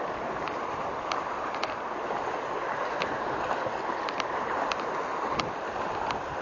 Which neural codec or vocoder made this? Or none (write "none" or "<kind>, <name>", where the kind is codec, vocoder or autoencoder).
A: none